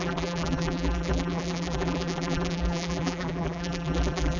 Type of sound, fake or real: fake